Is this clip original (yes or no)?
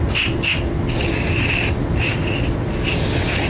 yes